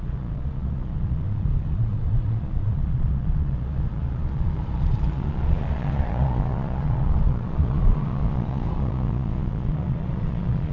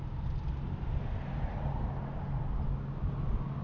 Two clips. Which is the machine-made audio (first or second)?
first